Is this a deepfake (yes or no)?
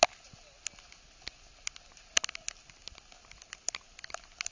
no